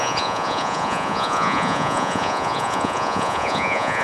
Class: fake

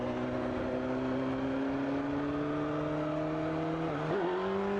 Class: real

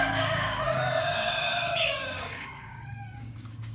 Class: fake